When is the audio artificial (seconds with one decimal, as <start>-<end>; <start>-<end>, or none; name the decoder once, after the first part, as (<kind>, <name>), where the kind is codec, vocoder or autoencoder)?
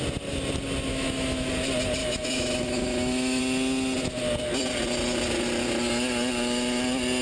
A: 0.9-1.5 (autoencoder, DAC-VAE); 2.0-3.4